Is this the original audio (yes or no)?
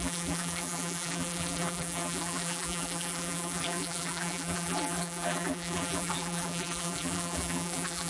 no